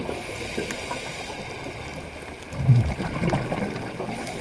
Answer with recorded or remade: recorded